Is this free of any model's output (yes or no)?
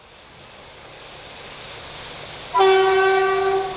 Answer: yes